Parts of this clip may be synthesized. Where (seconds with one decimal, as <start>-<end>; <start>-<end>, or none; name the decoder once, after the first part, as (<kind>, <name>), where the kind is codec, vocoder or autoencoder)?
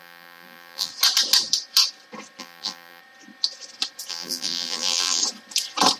0.0-0.9 (vocoder, BigVGAN v2); 2.4-3.0; 4.1-5.2